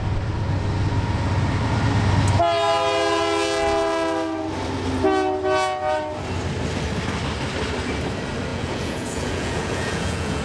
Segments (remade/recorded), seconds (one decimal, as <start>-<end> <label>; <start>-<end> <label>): 0.0-8.5 recorded; 8.5-10.4 remade